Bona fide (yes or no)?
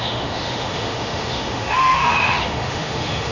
no